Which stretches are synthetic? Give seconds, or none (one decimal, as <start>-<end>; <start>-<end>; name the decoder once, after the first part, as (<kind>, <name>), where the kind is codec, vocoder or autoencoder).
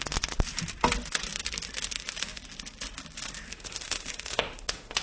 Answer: 3.5-5.0 (autoencoder, DAC-VAE)